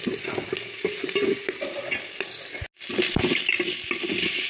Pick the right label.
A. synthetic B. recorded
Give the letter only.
B